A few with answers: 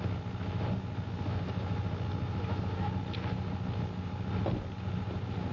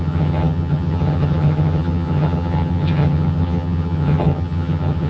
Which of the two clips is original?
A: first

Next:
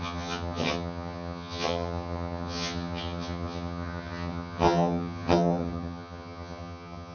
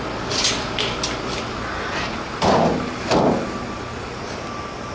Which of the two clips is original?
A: second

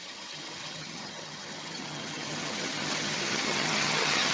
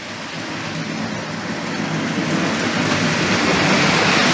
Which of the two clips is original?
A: second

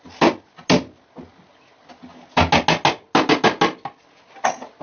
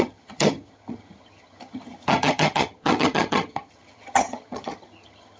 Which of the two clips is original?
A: first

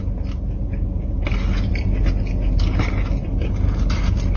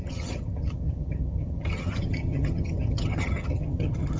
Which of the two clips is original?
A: first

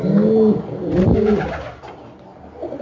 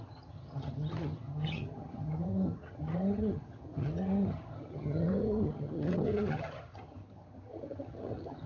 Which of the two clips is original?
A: first